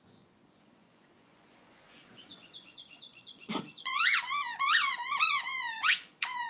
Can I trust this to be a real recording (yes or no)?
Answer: no